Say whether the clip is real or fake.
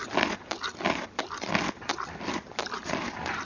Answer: real